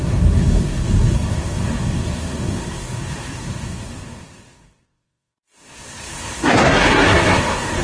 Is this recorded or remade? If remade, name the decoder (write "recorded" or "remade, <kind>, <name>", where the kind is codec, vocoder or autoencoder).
remade, codec, SNAC